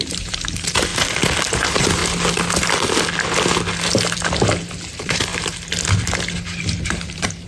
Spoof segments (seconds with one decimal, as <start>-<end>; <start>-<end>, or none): 0.0-0.9; 1.5-2.0; 4.8-5.3; 6.8-7.5